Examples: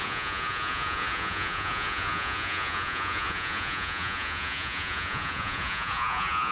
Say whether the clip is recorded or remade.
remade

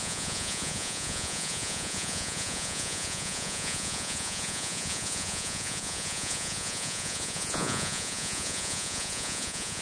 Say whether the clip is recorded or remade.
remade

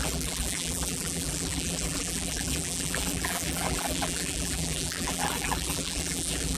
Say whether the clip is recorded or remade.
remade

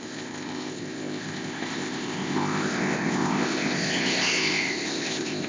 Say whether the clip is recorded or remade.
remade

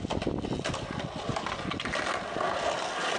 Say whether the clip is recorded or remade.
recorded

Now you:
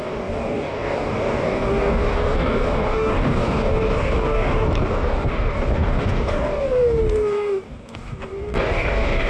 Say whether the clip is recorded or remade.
remade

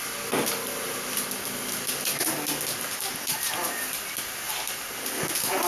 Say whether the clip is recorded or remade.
recorded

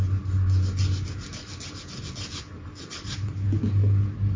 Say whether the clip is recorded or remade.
recorded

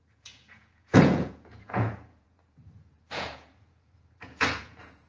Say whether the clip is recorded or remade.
remade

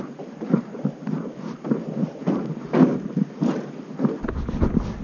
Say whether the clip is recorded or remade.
recorded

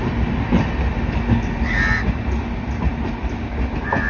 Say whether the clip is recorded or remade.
recorded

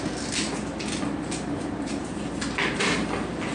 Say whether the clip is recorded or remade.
recorded